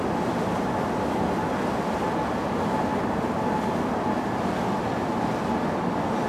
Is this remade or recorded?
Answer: recorded